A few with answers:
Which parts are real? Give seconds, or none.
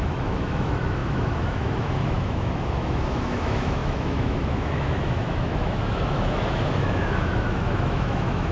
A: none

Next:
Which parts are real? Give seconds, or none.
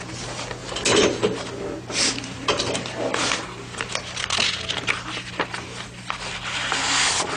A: 0.0-7.4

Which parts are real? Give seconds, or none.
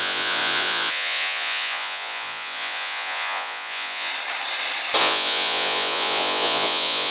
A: 4.1-5.0